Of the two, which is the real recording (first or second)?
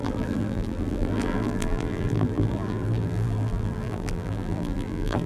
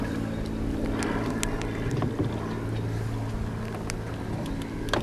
second